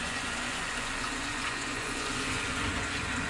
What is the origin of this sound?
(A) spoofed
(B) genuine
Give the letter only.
A